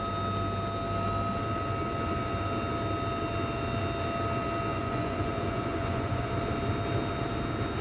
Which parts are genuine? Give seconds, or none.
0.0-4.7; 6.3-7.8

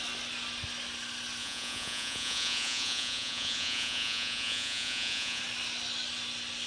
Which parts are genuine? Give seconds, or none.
0.0-1.4; 5.4-6.7

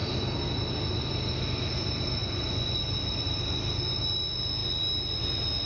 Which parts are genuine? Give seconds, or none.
0.0-2.2; 2.8-5.7

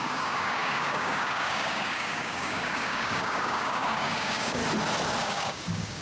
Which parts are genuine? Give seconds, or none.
4.6-5.2